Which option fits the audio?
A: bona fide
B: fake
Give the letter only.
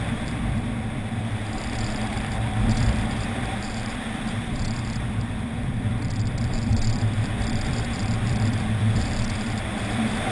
B